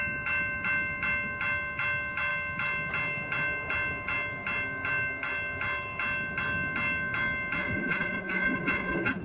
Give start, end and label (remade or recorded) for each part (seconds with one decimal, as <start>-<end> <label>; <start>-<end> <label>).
0.0-7.6 recorded; 7.6-9.2 remade